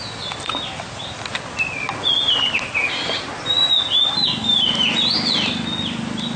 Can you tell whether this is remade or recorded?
recorded